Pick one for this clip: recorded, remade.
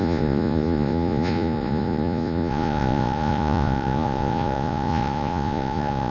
remade